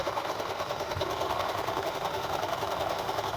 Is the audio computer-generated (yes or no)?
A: yes